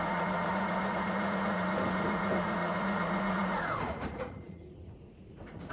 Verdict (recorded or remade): remade